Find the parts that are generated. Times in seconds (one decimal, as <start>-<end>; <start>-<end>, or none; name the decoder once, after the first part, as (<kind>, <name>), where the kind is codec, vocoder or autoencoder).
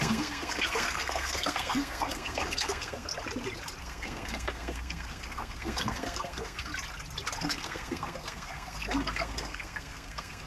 0.0-3.1 (codec, SNAC); 3.8-6.7; 7.4-10.5